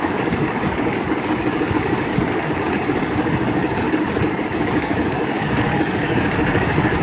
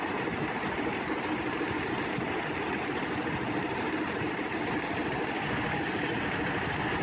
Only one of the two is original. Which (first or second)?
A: second